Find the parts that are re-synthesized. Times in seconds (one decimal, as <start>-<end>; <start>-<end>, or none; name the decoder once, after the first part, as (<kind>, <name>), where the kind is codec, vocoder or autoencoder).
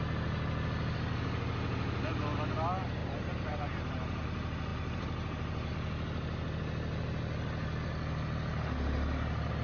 3.0-4.2 (vocoder, BigVGAN v2); 4.7-5.7